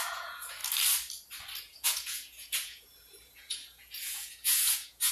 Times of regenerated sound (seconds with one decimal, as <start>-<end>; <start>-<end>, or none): 0.0-0.6; 1.6-5.1